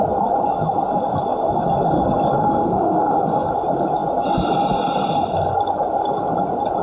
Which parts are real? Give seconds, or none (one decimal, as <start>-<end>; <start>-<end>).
0.0-2.4; 3.5-6.8